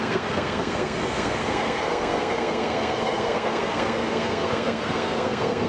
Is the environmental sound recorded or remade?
remade